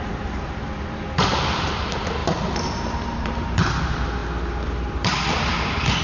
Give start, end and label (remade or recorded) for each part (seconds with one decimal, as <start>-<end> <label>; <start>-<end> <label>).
0.0-4.2 remade; 4.2-4.9 recorded; 4.9-6.0 remade